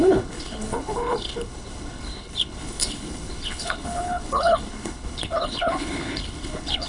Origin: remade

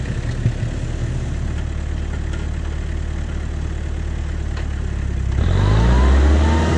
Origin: recorded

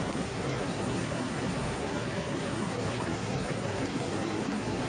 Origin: remade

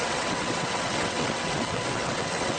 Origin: remade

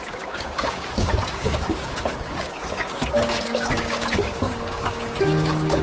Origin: remade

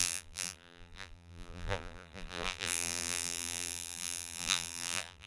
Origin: remade